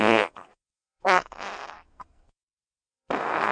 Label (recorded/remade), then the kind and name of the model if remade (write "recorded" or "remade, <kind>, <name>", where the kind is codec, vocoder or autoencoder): remade, codec, SNAC